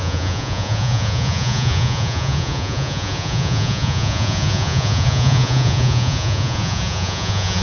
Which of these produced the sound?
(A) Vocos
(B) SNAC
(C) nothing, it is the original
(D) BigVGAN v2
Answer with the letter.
A